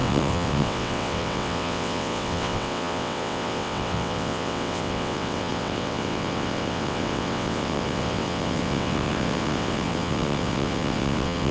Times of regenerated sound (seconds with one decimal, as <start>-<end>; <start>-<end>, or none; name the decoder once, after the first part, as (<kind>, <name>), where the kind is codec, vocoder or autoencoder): 0.0-11.5 (vocoder, WaveNeXt)